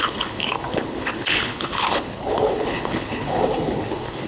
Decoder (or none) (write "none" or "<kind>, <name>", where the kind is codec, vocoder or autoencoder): codec, HILCodec